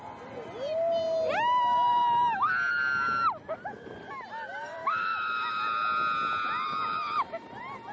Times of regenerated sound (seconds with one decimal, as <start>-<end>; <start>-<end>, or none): 4.8-5.4